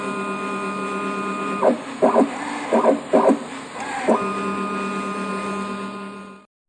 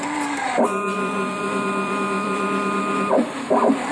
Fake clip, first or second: second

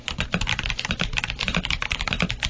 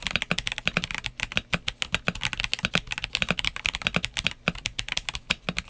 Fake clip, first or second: first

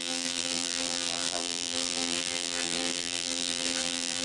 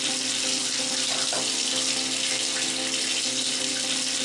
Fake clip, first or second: first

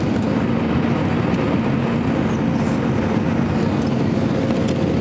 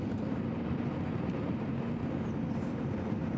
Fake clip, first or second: second